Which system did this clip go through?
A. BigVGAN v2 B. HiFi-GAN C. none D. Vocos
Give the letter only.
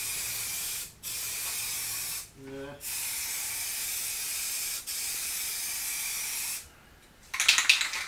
C